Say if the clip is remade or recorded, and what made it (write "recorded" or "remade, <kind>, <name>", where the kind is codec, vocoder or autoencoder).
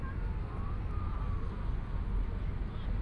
recorded